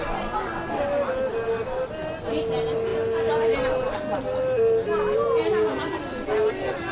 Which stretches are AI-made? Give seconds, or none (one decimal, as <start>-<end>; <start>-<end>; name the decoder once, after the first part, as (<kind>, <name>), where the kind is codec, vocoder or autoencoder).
none